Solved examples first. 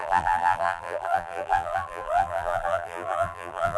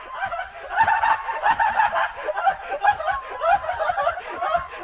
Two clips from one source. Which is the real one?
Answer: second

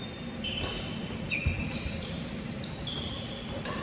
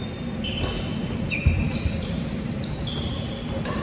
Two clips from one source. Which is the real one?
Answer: second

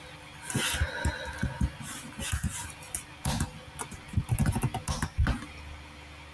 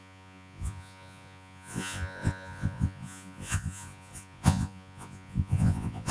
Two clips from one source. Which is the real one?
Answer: first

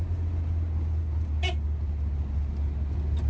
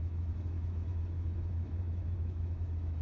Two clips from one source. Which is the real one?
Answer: first